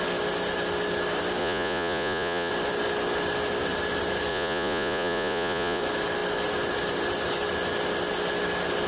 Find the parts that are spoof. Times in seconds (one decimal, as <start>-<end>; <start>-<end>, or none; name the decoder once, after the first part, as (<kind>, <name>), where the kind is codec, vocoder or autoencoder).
1.4-2.5 (vocoder, Vocos); 4.3-5.8